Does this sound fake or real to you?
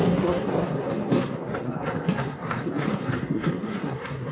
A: fake